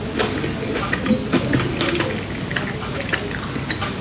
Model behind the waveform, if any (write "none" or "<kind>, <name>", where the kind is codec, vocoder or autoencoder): none